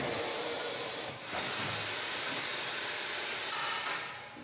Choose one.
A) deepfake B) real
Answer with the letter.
B